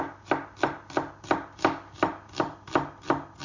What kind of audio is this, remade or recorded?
recorded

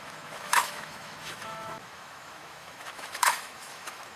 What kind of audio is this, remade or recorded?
remade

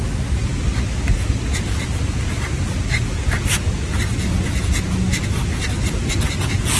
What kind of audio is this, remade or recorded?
recorded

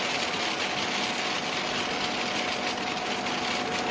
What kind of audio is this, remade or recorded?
recorded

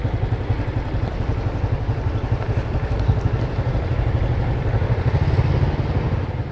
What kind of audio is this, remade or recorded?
recorded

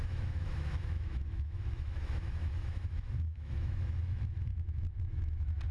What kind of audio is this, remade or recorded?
remade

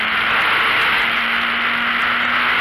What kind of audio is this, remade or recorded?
recorded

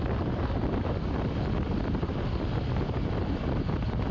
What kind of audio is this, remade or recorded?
recorded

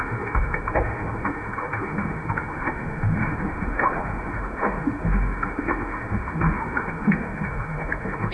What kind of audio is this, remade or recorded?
remade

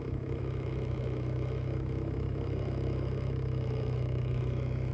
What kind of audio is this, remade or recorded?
remade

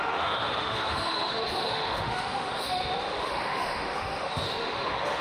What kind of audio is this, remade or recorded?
remade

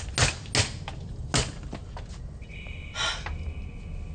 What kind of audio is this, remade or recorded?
recorded